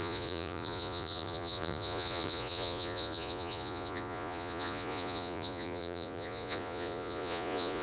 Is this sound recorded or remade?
remade